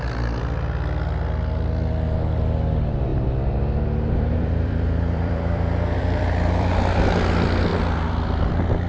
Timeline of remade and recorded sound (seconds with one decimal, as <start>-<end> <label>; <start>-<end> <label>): 0.0-3.1 recorded; 3.1-7.0 remade; 7.0-7.7 recorded; 7.7-8.5 remade; 8.5-8.9 recorded